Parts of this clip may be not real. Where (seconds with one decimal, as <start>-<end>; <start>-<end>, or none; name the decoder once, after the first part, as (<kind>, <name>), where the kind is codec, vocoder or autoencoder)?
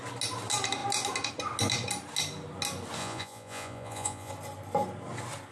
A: 3.0-4.3 (vocoder, Vocos)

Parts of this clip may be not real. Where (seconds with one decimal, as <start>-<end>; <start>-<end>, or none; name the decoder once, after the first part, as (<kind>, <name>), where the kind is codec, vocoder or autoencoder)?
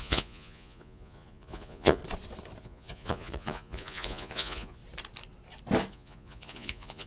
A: 0.0-2.0 (vocoder, Vocos); 2.6-4.8; 5.9-7.1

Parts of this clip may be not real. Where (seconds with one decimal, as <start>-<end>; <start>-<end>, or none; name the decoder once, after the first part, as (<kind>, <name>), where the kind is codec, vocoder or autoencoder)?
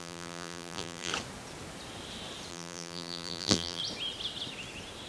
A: 0.0-1.1 (vocoder, BigVGAN v2); 2.5-3.8